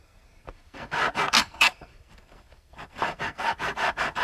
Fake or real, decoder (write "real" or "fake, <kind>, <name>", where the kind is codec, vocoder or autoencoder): fake, codec, SNAC